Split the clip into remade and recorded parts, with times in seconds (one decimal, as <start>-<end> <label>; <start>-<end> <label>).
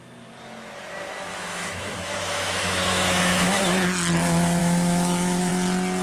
0.0-1.3 recorded; 1.3-3.6 remade; 3.6-4.6 recorded; 4.6-5.5 remade; 5.5-6.0 recorded